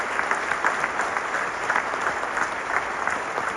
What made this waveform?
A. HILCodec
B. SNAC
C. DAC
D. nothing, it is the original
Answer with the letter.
D